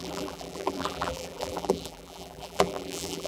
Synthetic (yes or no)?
yes